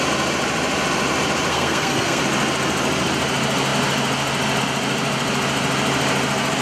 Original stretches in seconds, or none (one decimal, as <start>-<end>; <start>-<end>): 0.0-1.5; 2.2-6.6